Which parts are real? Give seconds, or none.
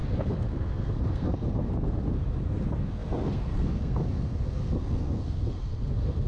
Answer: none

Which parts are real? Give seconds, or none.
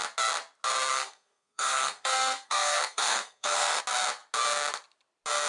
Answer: 0.0-0.9; 3.8-5.5